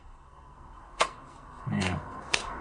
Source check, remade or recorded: remade